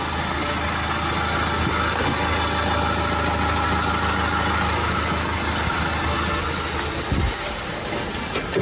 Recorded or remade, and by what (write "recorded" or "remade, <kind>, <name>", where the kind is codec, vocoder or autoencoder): recorded